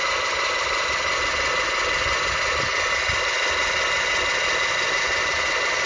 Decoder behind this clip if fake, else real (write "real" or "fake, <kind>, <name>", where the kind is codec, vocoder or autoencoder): real